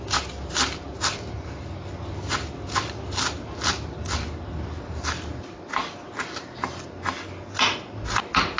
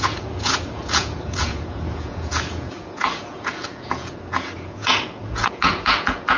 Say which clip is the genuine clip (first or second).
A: first